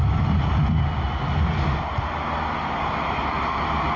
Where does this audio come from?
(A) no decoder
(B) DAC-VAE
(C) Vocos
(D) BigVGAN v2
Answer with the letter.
A